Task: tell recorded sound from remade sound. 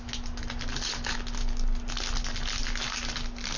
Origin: recorded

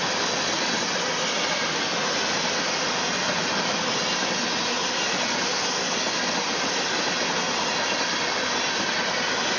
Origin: recorded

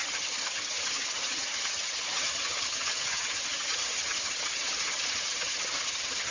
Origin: remade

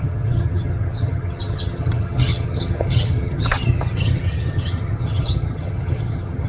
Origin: remade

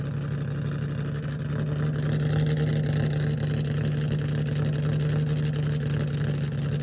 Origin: recorded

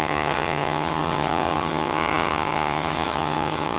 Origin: remade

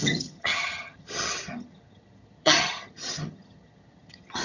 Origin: remade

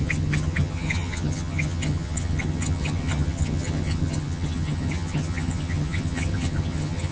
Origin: remade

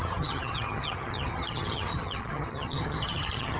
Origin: remade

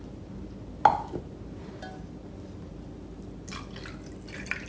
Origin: recorded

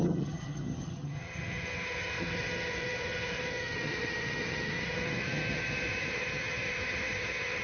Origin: remade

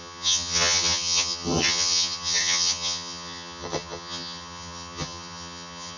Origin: remade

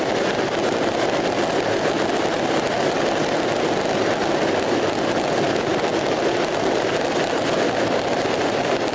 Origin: recorded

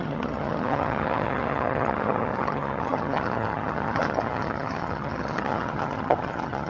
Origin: remade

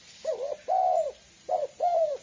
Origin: recorded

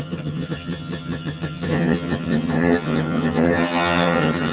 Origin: remade